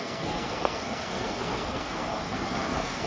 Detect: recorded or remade remade